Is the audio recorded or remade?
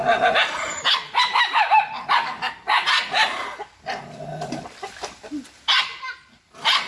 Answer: recorded